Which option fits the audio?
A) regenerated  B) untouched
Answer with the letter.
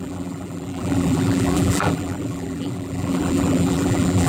A